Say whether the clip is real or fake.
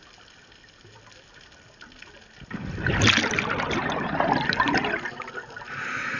real